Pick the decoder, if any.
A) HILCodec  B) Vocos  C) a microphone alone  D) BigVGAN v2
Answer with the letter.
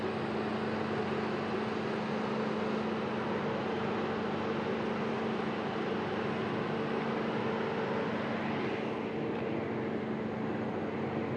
C